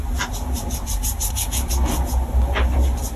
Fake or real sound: real